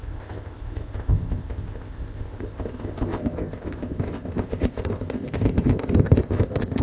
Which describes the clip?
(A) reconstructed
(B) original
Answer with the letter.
A